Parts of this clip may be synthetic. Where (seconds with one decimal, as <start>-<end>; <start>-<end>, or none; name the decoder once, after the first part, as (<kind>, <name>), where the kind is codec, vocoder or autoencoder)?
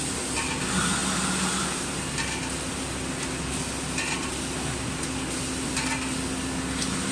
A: none